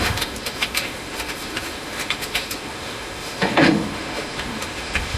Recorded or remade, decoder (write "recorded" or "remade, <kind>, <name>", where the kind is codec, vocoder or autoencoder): remade, autoencoder, DAC-VAE